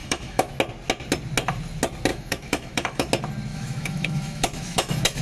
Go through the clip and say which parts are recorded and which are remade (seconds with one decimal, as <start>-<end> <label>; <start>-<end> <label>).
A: 0.0-0.5 remade; 0.5-2.1 recorded; 2.1-3.1 remade; 3.1-3.5 recorded; 3.5-5.2 remade